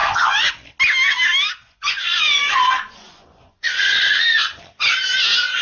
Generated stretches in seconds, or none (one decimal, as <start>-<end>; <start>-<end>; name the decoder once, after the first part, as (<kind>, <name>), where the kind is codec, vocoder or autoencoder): 0.0-0.5 (vocoder, Vocos); 1.6-4.6